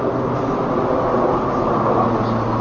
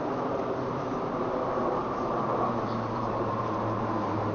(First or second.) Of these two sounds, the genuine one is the first